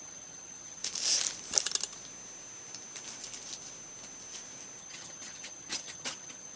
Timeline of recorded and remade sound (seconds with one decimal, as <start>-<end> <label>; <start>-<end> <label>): 0.0-0.8 remade; 0.8-4.8 recorded; 4.8-6.6 remade